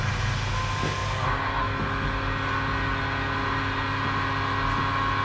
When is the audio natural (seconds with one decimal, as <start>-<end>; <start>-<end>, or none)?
0.0-5.2